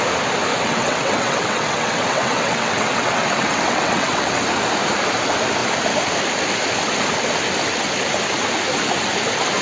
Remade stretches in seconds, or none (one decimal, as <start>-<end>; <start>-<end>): 0.5-4.4